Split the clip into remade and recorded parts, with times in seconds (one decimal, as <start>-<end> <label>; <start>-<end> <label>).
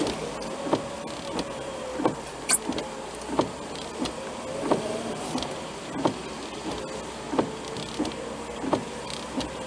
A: 0.0-9.7 recorded